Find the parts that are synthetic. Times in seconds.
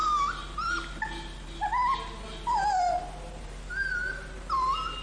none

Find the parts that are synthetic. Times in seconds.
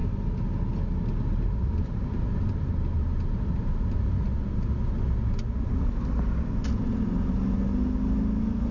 none